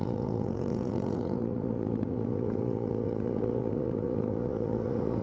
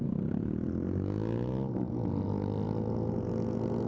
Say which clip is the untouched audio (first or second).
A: second